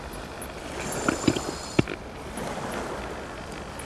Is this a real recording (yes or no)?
yes